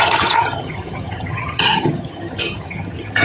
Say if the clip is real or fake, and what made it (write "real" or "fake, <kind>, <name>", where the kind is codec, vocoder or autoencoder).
fake, vocoder, HiFi-GAN